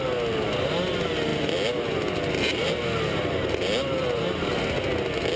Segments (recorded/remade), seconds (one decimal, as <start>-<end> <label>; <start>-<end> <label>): 0.0-1.3 recorded; 1.3-4.5 remade; 4.5-5.4 recorded